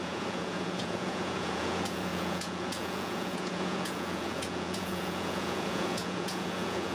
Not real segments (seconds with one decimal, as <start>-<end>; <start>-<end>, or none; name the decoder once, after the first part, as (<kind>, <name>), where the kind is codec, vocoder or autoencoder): 0.0-6.9 (vocoder, Vocos)